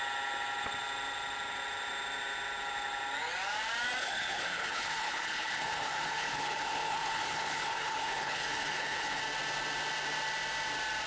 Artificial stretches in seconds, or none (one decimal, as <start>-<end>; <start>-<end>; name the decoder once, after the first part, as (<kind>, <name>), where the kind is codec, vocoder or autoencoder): 4.0-9.2 (codec, HILCodec)